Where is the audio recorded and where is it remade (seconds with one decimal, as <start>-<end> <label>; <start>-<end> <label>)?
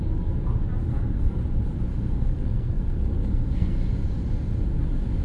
0.0-0.9 recorded; 0.9-1.4 remade; 1.4-1.9 recorded; 1.9-3.8 remade; 3.8-5.2 recorded